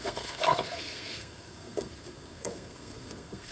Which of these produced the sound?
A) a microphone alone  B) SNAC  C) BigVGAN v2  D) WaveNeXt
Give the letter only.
B